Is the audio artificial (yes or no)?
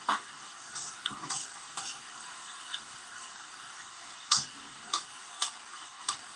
yes